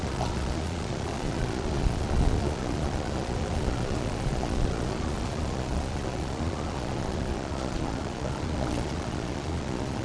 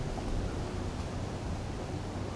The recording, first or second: second